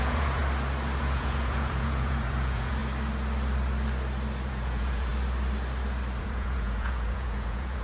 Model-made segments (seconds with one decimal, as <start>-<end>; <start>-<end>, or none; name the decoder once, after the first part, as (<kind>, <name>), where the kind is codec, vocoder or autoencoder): 0.0-0.4 (vocoder, Vocos); 1.0-2.8; 4.5-5.1; 6.2-7.8